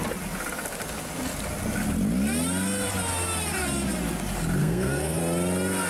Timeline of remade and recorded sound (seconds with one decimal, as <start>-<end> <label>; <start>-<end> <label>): 0.0-4.6 recorded; 4.6-5.2 remade; 5.2-5.9 recorded